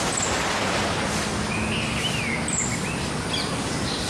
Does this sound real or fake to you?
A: real